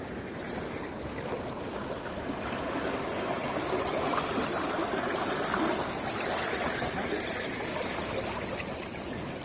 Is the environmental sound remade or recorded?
recorded